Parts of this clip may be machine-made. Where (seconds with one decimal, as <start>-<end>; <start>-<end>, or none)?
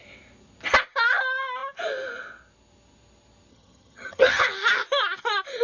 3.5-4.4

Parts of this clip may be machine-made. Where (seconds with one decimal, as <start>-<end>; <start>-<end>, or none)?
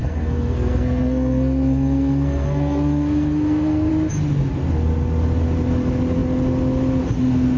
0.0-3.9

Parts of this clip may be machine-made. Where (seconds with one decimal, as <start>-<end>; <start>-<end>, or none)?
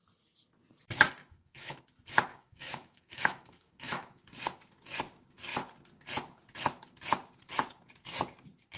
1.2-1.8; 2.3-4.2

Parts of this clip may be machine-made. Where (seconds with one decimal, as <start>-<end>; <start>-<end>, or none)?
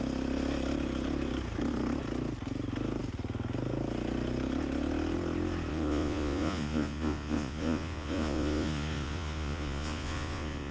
5.7-10.7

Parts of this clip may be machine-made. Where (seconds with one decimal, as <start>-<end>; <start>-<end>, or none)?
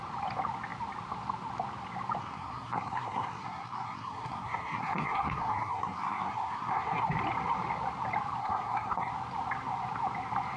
2.2-7.0; 8.4-9.1